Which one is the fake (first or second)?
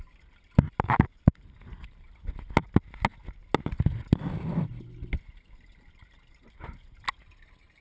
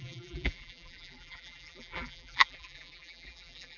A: second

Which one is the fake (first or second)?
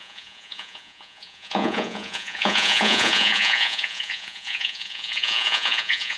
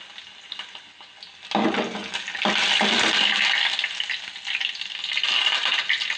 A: first